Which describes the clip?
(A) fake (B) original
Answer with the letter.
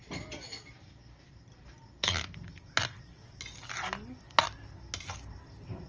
B